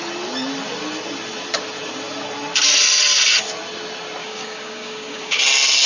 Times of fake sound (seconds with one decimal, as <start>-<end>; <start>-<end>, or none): 4.2-5.4